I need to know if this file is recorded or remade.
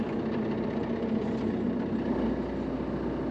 recorded